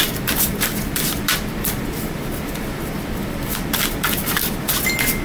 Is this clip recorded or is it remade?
remade